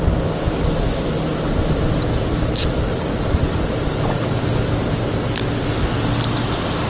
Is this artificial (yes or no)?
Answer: no